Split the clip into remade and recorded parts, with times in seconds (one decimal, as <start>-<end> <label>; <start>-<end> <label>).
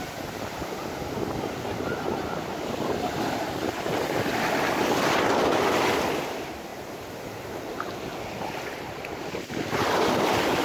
0.0-10.6 recorded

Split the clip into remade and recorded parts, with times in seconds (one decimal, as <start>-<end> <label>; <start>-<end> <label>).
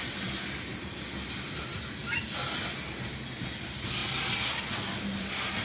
0.0-5.6 recorded